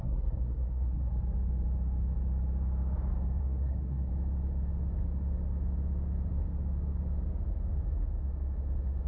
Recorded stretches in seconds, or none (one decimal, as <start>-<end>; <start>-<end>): 1.1-3.4; 4.1-9.1